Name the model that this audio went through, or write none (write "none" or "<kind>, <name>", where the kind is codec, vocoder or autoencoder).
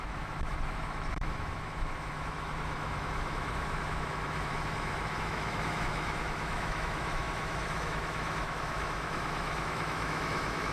autoencoder, DAC-VAE